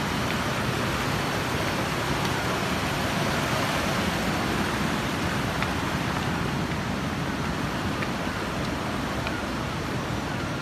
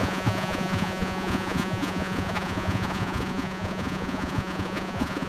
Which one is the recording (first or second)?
first